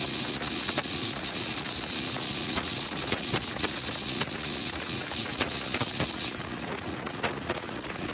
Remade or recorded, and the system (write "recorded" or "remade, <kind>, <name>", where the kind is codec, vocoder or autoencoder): remade, vocoder, Vocos